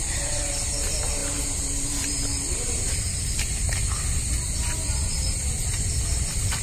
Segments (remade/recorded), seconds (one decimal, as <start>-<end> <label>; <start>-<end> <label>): 0.0-6.6 recorded